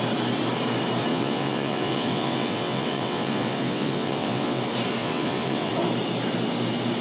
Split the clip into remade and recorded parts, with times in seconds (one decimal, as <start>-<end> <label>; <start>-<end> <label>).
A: 0.0-1.1 recorded; 1.1-4.6 remade; 4.6-5.0 recorded; 5.0-5.7 remade; 5.7-7.0 recorded